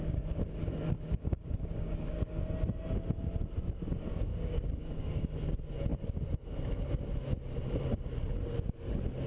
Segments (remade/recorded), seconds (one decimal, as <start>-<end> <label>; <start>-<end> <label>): 0.0-2.4 remade; 2.4-4.3 recorded; 4.3-5.2 remade; 5.2-9.3 recorded